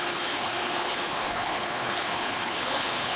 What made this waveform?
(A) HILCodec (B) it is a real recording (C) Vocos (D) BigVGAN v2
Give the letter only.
A